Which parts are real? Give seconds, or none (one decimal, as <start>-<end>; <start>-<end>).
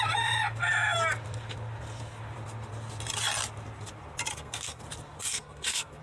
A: 0.0-4.3; 4.8-5.2